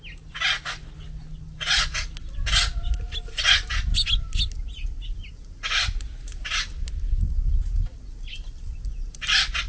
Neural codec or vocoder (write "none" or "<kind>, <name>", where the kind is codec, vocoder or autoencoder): none